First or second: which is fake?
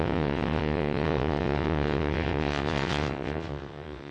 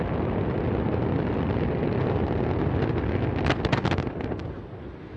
first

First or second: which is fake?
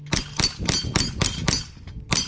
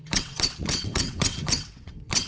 second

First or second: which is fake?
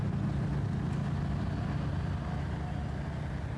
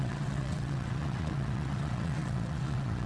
second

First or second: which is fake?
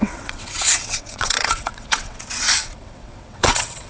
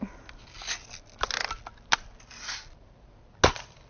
first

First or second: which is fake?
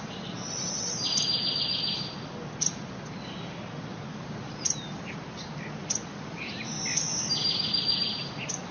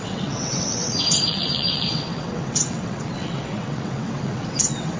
second